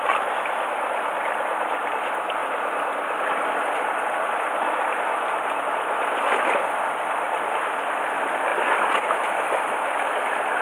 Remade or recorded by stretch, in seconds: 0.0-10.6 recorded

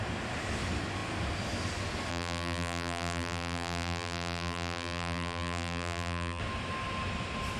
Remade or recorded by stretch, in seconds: 0.0-2.1 recorded; 2.1-6.4 remade; 6.4-7.6 recorded

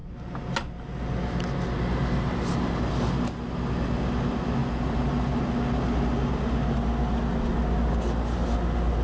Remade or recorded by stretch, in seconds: 0.0-4.6 recorded; 4.6-5.4 remade; 5.4-9.0 recorded

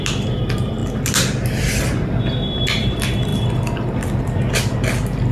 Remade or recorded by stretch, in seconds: 0.0-5.3 recorded